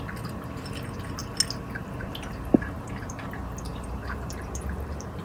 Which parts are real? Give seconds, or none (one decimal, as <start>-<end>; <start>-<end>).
1.2-1.8